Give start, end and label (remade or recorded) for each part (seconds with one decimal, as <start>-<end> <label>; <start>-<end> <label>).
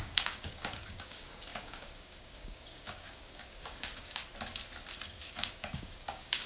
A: 0.0-4.2 remade; 4.2-5.3 recorded; 5.3-6.5 remade